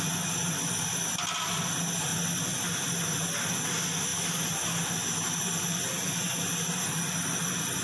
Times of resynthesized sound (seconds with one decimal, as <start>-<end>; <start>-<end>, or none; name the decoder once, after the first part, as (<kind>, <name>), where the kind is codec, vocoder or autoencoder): none

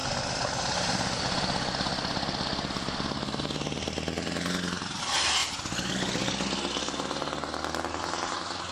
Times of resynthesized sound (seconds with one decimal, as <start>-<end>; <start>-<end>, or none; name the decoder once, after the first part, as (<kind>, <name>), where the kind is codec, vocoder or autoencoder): none

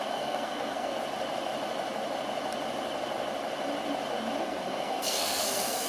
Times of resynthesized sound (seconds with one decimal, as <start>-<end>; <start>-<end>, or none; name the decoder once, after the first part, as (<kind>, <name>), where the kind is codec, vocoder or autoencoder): 0.0-0.9 (codec, SNAC); 4.4-5.9

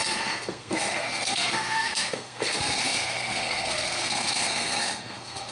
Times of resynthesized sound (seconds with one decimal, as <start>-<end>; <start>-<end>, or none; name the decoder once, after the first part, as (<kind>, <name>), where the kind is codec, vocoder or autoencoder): 0.0-5.5 (codec, SNAC)

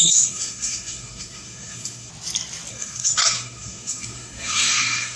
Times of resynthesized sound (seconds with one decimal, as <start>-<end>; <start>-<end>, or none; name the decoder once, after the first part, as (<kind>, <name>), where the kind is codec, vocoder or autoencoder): 0.0-2.1 (codec, SNAC); 2.7-5.2